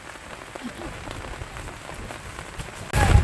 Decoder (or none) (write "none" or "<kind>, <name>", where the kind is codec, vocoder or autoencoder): none